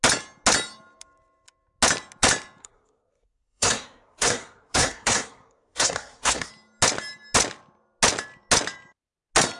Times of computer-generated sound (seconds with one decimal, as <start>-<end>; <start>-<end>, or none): 2.6-6.5